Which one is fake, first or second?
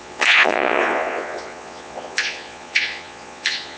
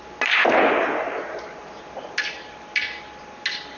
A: first